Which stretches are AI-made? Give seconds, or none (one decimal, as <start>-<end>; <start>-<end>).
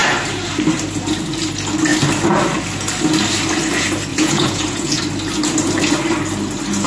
4.1-5.0